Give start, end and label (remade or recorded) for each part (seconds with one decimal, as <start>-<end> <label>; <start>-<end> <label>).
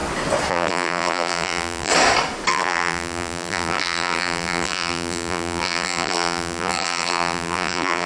0.0-0.5 recorded; 0.5-1.9 remade; 1.9-2.5 recorded; 2.5-8.1 remade